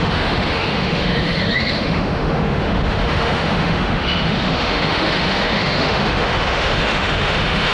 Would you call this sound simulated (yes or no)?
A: yes